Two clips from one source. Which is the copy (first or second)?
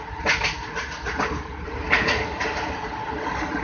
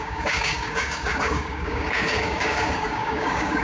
second